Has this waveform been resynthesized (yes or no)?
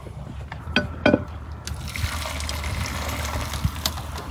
no